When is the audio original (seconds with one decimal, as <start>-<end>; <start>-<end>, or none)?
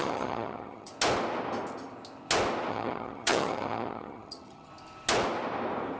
0.9-2.7; 4.7-6.0